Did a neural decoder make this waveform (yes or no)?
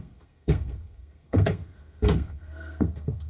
yes